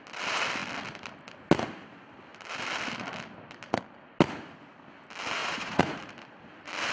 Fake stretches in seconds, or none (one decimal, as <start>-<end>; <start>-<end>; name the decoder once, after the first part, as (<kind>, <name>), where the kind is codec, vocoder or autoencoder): 5.4-6.0 (vocoder, Vocos)